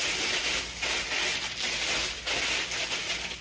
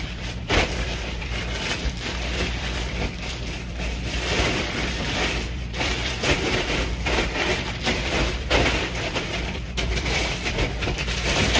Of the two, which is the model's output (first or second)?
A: second